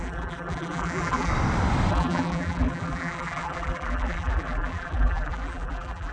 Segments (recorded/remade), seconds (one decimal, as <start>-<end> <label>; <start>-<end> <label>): 0.0-1.3 remade; 1.3-1.9 recorded; 1.9-6.1 remade